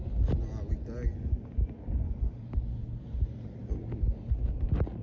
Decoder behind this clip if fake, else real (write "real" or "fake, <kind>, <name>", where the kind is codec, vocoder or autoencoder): real